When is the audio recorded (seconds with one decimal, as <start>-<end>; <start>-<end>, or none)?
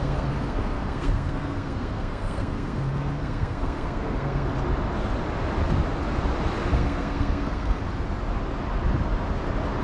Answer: 4.5-6.7; 7.8-9.8